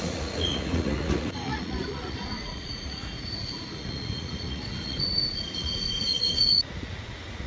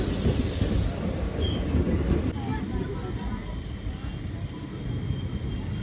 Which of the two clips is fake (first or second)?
first